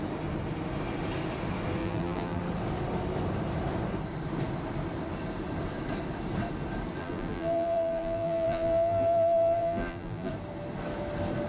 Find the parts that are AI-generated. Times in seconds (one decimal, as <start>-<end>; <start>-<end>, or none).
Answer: 1.8-2.4; 7.0-10.3